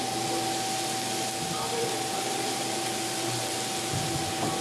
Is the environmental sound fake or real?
real